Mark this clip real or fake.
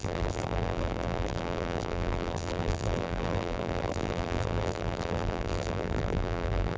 fake